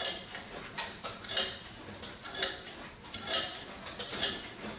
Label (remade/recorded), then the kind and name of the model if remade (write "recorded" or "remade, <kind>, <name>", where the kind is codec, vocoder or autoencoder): remade, vocoder, BigVGAN v2